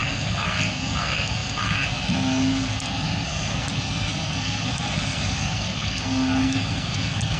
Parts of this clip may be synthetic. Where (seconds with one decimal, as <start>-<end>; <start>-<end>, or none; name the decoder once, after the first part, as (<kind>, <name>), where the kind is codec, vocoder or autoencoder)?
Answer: 0.0-7.4 (codec, SNAC)